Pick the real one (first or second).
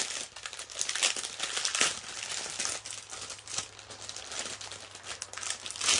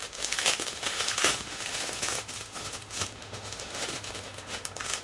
first